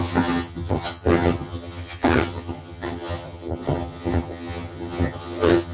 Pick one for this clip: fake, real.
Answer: fake